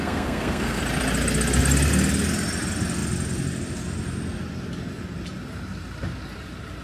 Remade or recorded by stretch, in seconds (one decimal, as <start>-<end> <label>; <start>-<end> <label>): 0.0-0.8 remade; 0.8-6.8 recorded